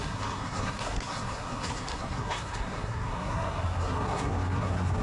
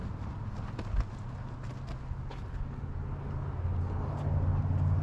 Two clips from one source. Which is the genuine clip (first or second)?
second